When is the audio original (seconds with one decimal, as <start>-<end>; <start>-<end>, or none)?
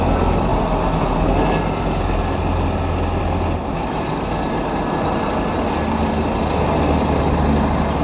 0.0-8.0